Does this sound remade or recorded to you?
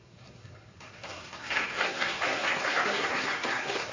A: remade